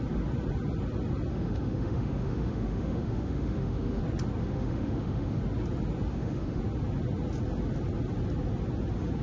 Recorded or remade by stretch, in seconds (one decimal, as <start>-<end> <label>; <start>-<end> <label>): 0.0-1.3 recorded; 1.3-4.0 remade; 4.0-4.4 recorded; 4.4-5.4 remade; 5.4-6.1 recorded; 6.1-6.6 remade; 6.6-9.2 recorded